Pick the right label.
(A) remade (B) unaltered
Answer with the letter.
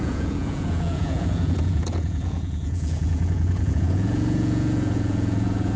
A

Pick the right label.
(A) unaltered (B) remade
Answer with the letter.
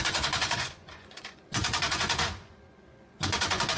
B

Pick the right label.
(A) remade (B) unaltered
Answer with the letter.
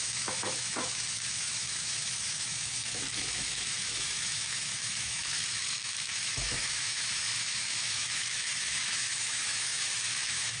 A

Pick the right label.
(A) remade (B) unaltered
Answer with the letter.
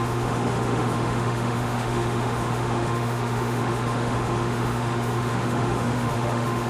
A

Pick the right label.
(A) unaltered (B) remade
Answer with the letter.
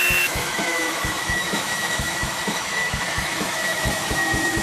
B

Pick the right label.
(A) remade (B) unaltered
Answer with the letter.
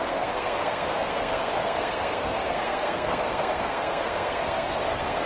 A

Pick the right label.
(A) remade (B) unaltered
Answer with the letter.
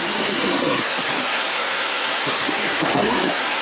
A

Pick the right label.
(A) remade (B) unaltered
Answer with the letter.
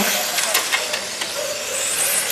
B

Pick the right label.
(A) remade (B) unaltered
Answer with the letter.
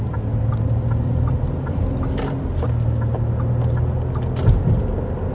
B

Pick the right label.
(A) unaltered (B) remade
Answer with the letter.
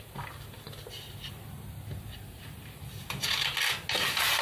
A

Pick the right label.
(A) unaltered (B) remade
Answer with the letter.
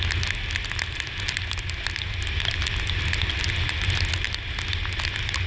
A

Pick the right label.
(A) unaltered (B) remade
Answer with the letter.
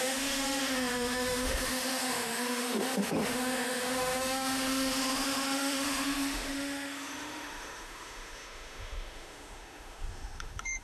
B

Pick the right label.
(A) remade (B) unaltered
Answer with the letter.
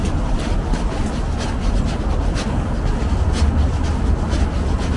B